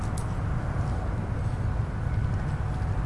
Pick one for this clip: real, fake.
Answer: real